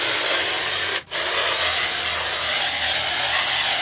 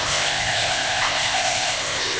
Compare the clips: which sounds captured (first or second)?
first